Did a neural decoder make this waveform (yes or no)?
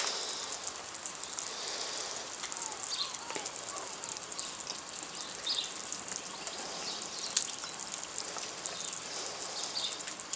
no